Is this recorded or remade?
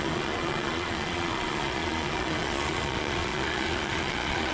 remade